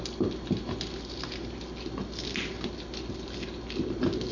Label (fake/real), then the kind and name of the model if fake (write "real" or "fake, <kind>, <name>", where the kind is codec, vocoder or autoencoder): real